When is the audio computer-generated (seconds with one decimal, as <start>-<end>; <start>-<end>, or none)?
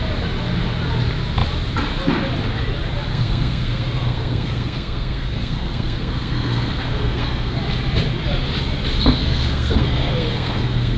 3.1-7.6; 9.2-11.0